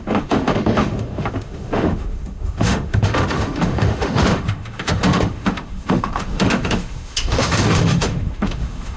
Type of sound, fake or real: fake